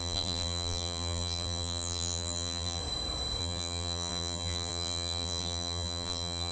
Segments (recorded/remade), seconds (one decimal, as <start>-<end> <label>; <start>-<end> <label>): 0.0-2.8 remade; 2.8-3.4 recorded; 3.4-6.5 remade